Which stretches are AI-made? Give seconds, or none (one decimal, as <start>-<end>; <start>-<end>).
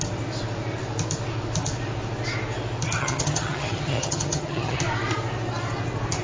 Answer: 3.0-4.8